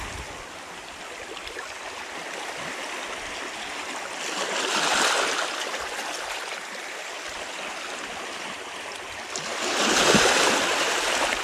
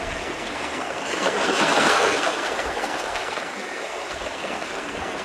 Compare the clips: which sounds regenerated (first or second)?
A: second